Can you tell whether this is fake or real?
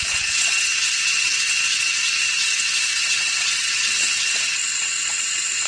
fake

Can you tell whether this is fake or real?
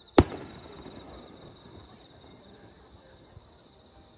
fake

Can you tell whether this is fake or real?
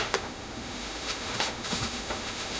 fake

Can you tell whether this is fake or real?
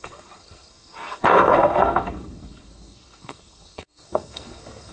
fake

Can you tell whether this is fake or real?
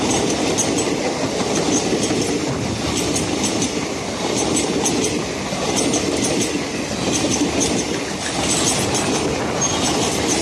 real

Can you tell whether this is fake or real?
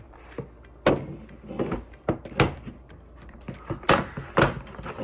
real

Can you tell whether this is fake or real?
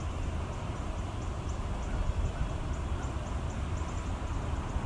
real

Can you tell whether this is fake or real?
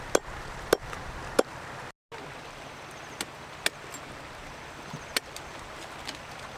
real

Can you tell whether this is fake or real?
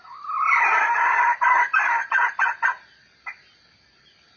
real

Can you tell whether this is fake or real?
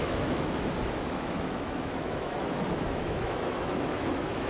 fake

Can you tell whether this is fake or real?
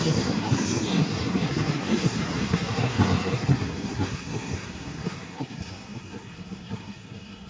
fake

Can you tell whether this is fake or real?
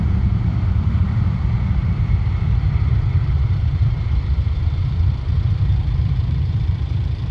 fake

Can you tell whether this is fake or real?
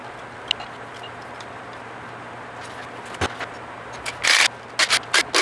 real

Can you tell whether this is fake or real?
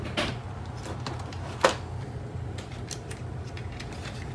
fake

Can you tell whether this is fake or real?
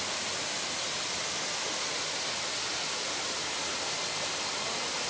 real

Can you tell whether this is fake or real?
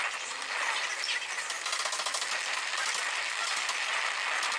real